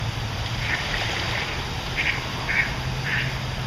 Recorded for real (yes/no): no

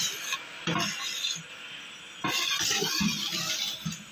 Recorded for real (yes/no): yes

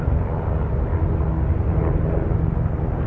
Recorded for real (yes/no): yes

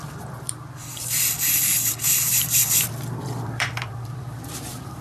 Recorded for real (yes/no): no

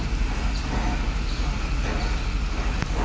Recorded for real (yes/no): yes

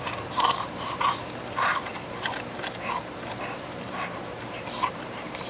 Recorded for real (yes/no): no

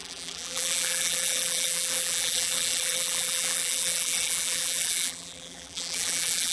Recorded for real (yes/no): no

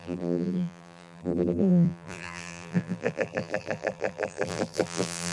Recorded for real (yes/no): no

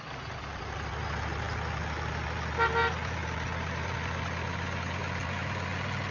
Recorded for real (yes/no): yes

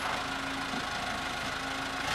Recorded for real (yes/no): yes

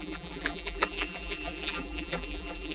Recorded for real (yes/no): no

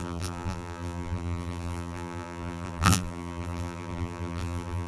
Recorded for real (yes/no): no